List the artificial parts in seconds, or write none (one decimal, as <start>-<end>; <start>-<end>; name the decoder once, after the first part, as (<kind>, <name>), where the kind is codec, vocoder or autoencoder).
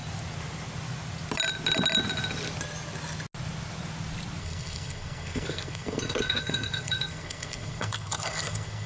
4.4-8.9 (codec, SNAC)